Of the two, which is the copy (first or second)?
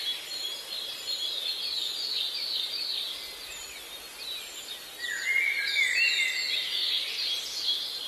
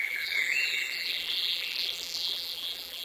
second